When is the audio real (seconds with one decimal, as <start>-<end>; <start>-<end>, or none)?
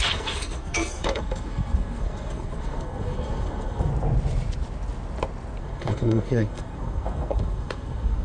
3.9-5.6